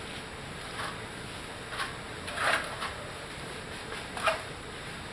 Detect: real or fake real